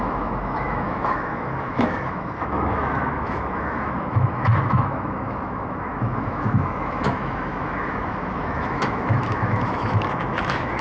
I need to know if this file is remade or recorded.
remade